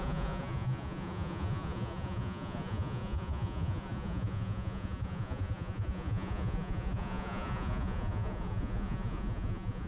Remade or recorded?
remade